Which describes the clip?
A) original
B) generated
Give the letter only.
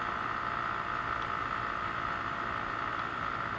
A